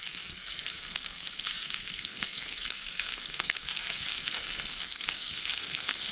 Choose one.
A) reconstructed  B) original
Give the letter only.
A